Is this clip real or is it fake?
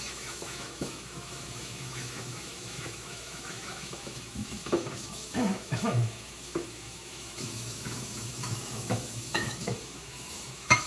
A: fake